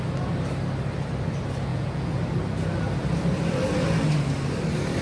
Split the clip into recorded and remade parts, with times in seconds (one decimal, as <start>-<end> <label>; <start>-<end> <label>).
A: 0.0-1.7 recorded; 1.7-2.2 remade; 2.2-5.0 recorded